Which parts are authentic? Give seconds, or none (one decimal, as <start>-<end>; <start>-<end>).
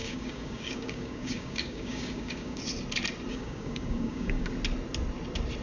2.6-3.3; 4.5-5.6